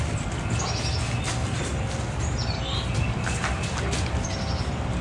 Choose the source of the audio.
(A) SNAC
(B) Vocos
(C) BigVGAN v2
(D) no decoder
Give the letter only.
D